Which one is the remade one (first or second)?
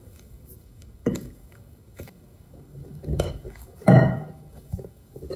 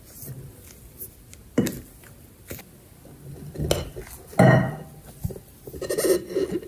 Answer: first